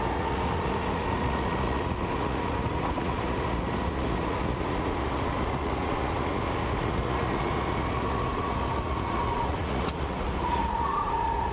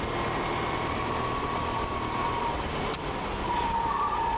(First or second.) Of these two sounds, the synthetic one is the first